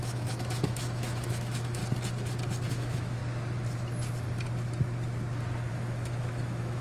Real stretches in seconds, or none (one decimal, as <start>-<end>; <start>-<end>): 1.8-2.7; 3.2-5.7